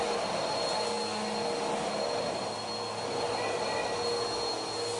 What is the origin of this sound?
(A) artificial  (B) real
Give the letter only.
B